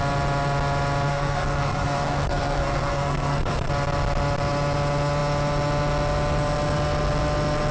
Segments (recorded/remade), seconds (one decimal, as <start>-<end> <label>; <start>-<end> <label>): 0.0-1.1 recorded; 1.1-3.7 remade; 3.7-7.7 recorded